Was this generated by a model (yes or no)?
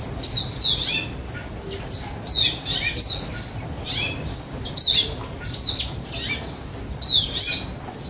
no